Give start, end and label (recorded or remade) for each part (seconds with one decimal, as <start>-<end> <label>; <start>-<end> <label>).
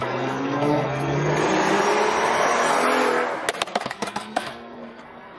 0.0-1.3 remade; 1.3-3.7 recorded; 3.7-5.4 remade